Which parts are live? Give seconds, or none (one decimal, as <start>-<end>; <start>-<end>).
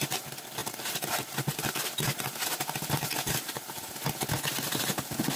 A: 0.0-5.4